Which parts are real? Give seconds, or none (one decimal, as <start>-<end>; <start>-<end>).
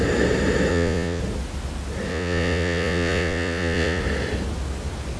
0.0-0.7; 1.2-2.1; 4.0-5.2